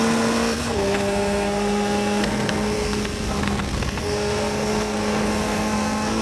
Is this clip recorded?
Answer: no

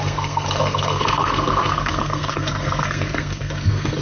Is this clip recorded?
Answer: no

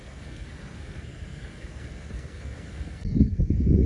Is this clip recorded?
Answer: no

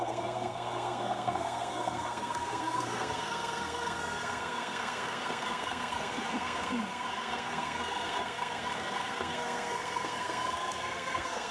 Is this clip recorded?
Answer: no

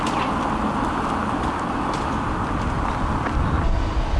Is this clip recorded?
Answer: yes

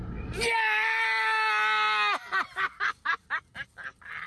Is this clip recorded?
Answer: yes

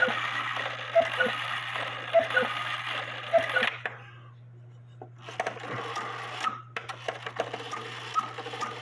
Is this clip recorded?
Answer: yes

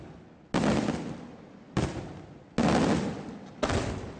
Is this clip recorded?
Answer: yes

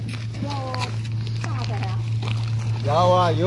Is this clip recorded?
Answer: yes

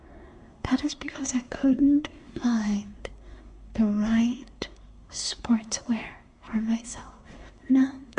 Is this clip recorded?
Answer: no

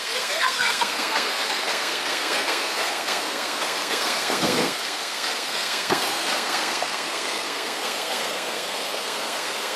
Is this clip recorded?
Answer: no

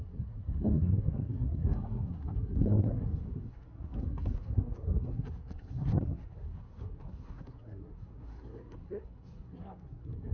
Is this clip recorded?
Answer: no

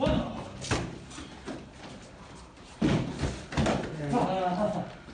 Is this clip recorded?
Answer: yes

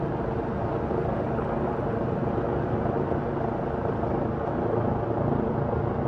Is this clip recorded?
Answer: yes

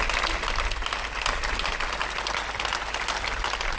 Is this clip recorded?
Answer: yes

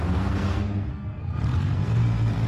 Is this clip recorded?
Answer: no